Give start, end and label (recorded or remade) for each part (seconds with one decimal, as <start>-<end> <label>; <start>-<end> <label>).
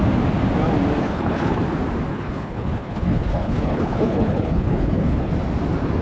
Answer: 0.0-1.0 recorded; 1.0-1.6 remade; 1.6-2.1 recorded; 2.1-5.3 remade; 5.3-6.0 recorded